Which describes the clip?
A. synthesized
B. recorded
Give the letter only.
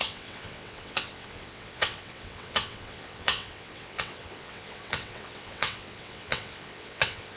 A